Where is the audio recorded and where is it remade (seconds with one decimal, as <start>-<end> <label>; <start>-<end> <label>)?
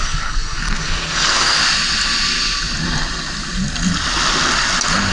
0.0-1.6 remade; 1.6-5.1 recorded